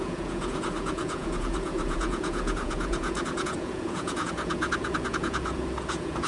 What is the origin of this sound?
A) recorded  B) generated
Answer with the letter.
B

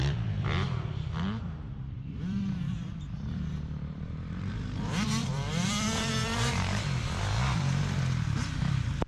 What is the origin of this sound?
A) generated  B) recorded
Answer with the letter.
A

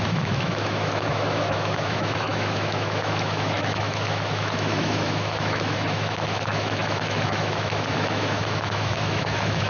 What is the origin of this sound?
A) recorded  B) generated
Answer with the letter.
B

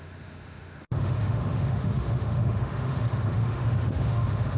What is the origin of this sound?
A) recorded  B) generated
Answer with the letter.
B